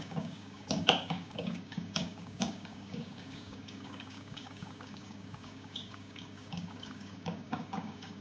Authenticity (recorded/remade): remade